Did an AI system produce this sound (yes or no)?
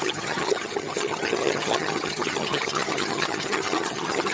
yes